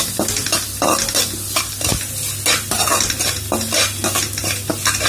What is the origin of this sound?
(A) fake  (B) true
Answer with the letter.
B